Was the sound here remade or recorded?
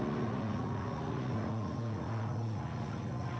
remade